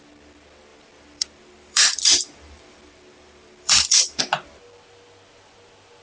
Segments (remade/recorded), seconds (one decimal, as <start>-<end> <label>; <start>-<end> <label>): 0.0-0.7 recorded; 0.7-4.2 remade; 4.2-6.0 recorded